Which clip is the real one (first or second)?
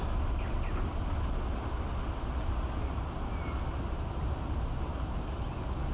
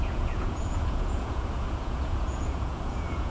first